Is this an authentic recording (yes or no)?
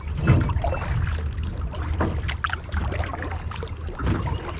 yes